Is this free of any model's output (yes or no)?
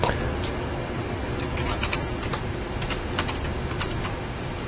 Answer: yes